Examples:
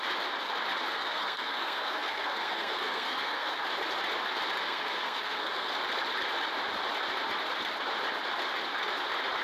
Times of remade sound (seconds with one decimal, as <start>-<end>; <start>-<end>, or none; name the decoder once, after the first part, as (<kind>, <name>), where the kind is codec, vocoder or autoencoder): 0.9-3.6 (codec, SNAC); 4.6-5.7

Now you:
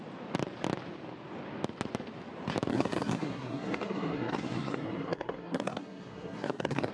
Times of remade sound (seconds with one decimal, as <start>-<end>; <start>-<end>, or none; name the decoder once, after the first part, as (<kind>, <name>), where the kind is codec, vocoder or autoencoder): 2.7-6.9 (codec, SNAC)

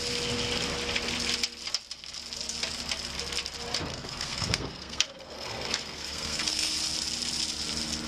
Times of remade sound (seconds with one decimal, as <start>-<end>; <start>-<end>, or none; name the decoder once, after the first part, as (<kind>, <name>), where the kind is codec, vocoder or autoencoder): 3.9-6.7 (codec, SNAC)

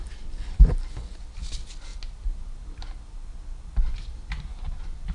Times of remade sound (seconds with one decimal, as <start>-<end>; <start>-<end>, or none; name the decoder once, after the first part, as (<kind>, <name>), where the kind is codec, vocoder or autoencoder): none

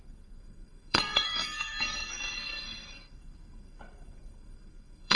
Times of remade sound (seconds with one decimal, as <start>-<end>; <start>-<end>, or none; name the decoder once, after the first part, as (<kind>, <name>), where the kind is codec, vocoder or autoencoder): 0.0-5.2 (codec, SNAC)